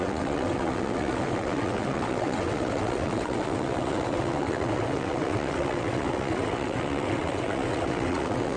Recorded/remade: remade